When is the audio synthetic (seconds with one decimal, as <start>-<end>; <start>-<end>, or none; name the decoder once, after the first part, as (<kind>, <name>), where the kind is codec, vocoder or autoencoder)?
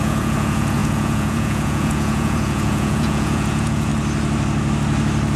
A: 0.0-3.9 (vocoder, Vocos)